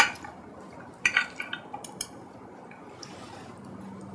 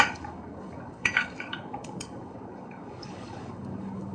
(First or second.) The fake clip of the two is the second